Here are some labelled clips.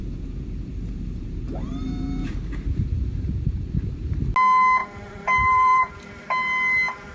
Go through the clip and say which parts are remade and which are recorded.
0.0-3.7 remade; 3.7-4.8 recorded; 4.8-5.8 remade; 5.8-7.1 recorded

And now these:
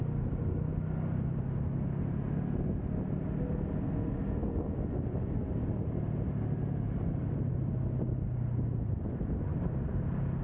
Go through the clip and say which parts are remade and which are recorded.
0.0-10.4 recorded

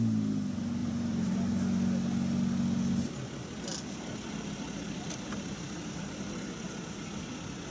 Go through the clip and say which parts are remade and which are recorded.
0.0-0.8 recorded; 0.8-1.5 remade; 1.5-7.7 recorded

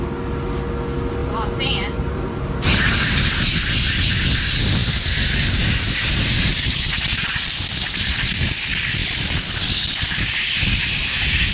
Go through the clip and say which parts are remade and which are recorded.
0.0-1.2 recorded; 1.2-3.4 remade; 3.4-4.8 recorded; 4.8-7.6 remade; 7.6-11.5 recorded

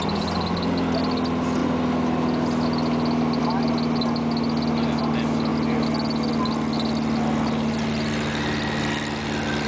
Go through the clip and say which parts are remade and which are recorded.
0.0-9.7 recorded

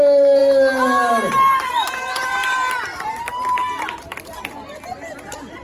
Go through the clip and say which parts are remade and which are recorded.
0.0-1.5 recorded; 1.5-2.3 remade; 2.3-2.9 recorded; 2.9-4.4 remade; 4.4-5.6 recorded

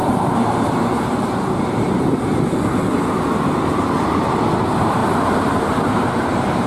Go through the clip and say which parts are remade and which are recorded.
0.0-2.0 remade; 2.0-5.0 recorded; 5.0-6.7 remade